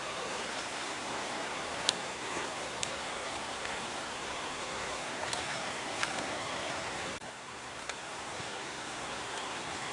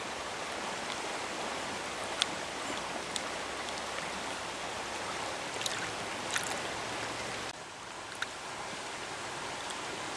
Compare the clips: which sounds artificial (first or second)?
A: first